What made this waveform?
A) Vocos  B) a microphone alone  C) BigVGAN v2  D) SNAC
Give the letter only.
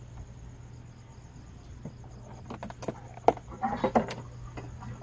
B